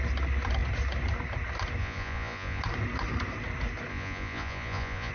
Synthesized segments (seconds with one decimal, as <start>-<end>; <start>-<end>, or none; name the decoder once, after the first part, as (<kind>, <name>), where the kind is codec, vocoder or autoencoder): 1.8-2.6 (vocoder, Vocos); 3.9-5.1